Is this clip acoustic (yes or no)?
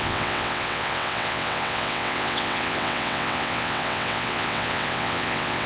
no